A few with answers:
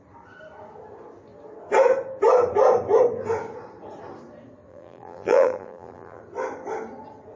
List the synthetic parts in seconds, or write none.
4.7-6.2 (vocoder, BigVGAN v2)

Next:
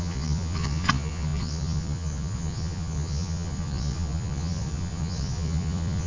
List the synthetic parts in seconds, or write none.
0.0-6.1 (vocoder, Vocos)

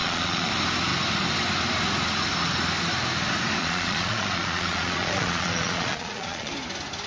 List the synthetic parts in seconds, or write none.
0.0-0.5 (vocoder, Vocos); 3.6-6.5

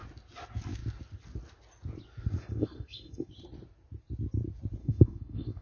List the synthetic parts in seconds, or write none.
2.4-3.3 (codec, SNAC); 4.8-5.6

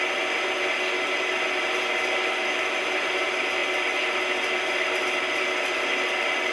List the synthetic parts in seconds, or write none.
none

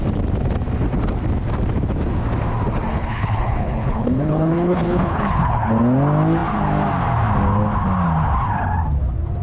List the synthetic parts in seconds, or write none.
2.9-5.7 (codec, HILCodec)